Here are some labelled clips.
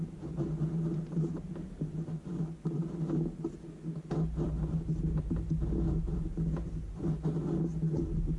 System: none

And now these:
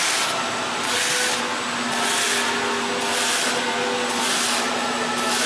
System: none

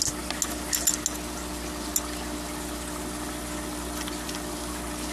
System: none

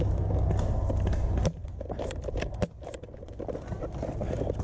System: none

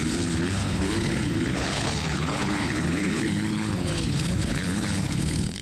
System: codec, HILCodec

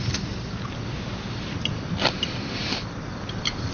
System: none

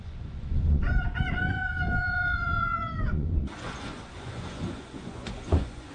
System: vocoder, Vocos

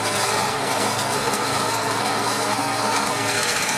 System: codec, SNAC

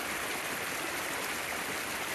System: none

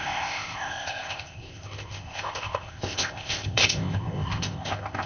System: codec, ZipCodec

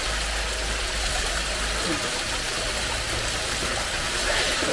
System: none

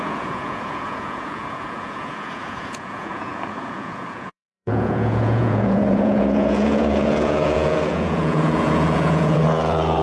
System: vocoder, Vocos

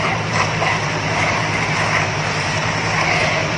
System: vocoder, BigVGAN v2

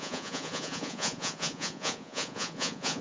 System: vocoder, Vocos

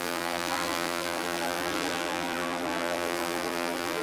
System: vocoder, BigVGAN v2